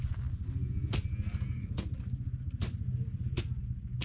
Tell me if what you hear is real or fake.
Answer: real